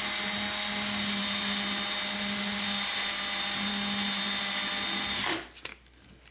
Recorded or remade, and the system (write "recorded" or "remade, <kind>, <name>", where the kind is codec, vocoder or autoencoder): recorded